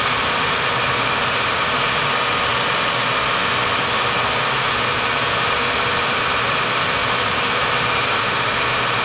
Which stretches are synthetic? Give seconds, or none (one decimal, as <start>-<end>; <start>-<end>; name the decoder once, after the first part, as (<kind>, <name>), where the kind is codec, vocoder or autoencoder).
0.0-1.8 (vocoder, BigVGAN v2); 4.4-9.0